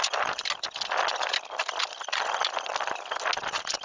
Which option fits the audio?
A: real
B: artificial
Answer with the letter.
A